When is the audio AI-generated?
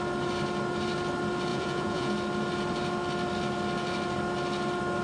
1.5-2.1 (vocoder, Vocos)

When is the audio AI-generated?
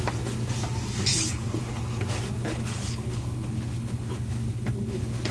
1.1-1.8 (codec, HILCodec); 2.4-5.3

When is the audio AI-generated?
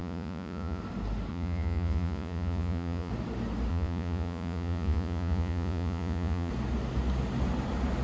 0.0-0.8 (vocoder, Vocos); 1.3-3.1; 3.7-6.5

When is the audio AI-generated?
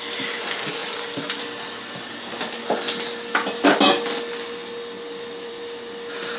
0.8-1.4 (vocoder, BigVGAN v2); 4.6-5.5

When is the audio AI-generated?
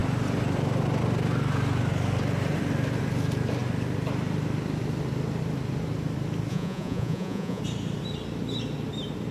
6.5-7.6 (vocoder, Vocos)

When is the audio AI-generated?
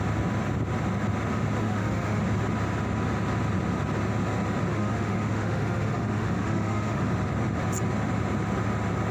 1.6-2.2 (autoencoder, DAC-VAE); 4.7-7.0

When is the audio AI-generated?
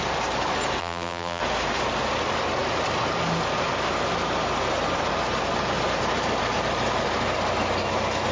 0.8-1.4 (vocoder, BigVGAN v2)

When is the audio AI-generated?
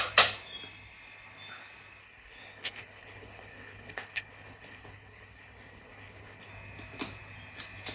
2.0-6.5 (codec, HILCodec)